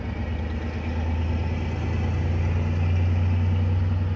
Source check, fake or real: real